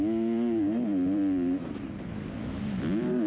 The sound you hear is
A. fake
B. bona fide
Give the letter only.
B